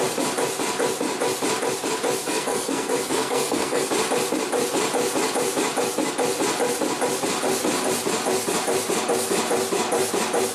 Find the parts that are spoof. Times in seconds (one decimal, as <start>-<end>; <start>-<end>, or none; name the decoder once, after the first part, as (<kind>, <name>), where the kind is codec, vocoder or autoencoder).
2.2-3.9 (codec, SNAC)